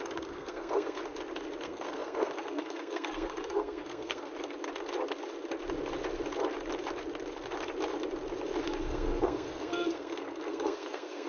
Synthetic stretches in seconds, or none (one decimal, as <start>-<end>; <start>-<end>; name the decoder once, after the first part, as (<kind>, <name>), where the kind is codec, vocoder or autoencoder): 0.0-1.0 (codec, SNAC); 1.6-4.3; 8.6-11.3